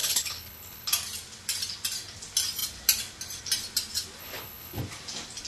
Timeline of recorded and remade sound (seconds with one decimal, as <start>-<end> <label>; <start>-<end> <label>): 0.0-0.9 remade; 0.9-4.2 recorded; 4.2-4.8 remade; 4.8-5.5 recorded